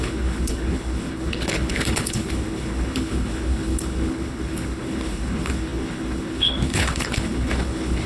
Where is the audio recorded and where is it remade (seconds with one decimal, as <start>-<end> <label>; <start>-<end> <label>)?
0.0-8.1 remade